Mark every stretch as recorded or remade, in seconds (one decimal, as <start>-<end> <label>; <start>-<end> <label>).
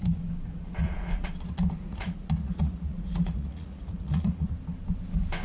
0.0-0.8 recorded; 0.8-1.3 remade; 1.3-1.8 recorded; 1.8-4.5 remade; 4.5-5.4 recorded